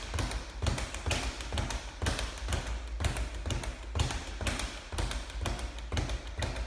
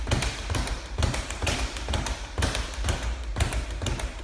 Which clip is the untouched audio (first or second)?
first